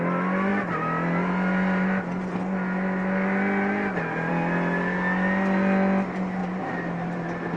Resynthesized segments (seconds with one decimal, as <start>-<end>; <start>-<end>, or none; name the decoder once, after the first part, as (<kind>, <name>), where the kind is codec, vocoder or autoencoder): 6.4-7.6 (vocoder, BigVGAN v2)

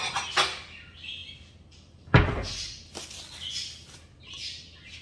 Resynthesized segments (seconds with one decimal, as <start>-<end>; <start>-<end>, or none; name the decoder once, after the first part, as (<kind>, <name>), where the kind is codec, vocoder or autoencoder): none

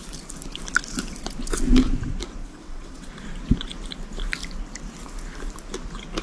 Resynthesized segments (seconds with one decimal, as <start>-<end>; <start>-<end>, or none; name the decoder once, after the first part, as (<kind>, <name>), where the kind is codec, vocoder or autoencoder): 2.4-3.1 (vocoder, WaveNeXt)

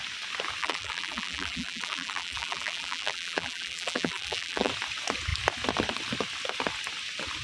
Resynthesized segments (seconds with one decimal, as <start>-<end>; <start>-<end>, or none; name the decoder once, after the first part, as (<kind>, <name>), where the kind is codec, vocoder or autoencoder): 0.6-4.7 (vocoder, BigVGAN v2)

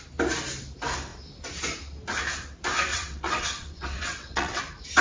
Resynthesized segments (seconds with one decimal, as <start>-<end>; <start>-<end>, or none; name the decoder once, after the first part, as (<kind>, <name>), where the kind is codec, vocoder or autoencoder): 2.9-4.6 (vocoder, WaveNeXt)

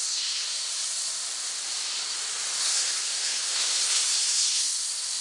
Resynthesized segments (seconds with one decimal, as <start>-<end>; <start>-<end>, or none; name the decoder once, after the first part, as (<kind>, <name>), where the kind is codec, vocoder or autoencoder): 0.0-0.7 (codec, SNAC); 2.6-5.2

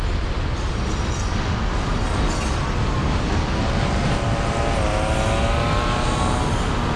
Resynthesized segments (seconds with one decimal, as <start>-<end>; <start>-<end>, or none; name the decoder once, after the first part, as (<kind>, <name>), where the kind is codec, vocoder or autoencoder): 3.0-3.6 (codec, DAC)